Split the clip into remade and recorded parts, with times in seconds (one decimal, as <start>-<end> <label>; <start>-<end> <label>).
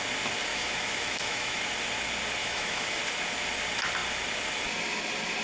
0.0-0.5 recorded; 0.5-1.6 remade; 1.6-2.4 recorded; 2.4-3.0 remade; 3.0-5.4 recorded